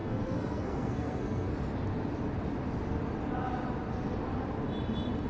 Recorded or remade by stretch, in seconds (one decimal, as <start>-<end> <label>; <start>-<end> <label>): 0.0-1.5 remade; 1.5-5.3 recorded